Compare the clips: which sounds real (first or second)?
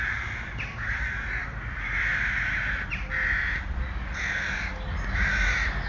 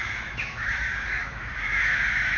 first